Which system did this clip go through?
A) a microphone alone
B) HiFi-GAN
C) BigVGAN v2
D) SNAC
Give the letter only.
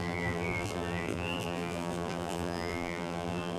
C